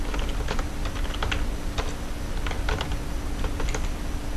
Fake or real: real